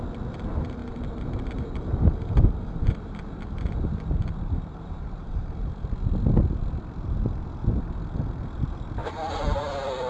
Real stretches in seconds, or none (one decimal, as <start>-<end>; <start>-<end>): 0.0-0.8; 5.9-9.0; 9.6-10.1